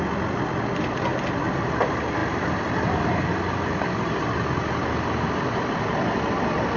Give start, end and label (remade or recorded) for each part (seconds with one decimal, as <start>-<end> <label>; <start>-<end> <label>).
0.0-6.8 recorded